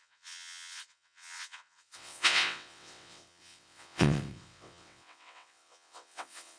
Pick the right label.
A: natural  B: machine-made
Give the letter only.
B